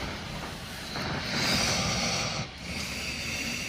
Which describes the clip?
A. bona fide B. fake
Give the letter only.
A